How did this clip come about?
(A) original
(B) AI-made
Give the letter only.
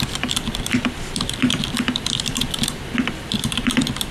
B